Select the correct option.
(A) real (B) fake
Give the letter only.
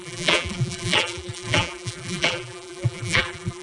B